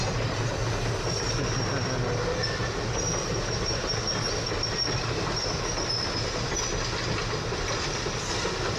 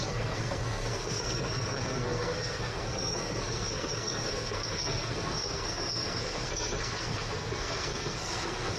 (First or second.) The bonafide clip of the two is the first